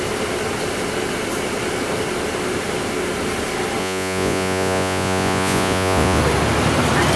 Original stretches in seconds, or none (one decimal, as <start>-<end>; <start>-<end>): 0.0-3.8; 6.2-7.2

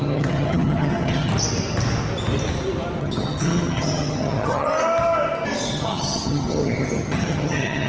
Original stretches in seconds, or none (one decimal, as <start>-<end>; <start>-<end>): 1.3-3.0; 4.7-5.7

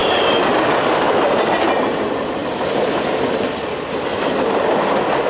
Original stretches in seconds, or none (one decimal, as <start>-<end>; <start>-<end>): 0.0-5.3

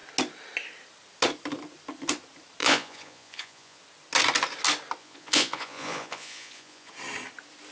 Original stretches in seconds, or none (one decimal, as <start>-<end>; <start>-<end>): 0.0-2.6; 3.8-5.0; 6.9-7.7

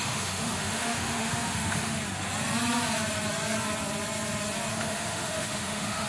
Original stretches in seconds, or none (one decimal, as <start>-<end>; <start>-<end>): 2.0-4.7

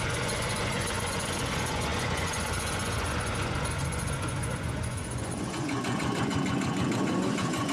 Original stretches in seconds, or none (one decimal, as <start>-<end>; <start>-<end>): none